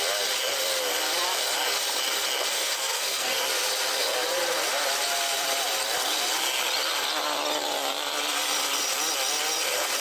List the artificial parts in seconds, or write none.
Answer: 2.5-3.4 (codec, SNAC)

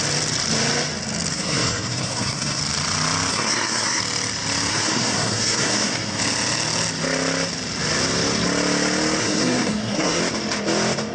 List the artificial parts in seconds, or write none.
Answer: 1.3-2.6 (codec, SNAC); 3.3-4.0; 4.7-6.2; 9.2-10.2

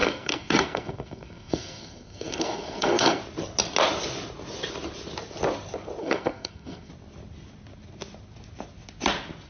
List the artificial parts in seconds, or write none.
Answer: 0.0-3.2 (codec, SNAC); 6.0-6.9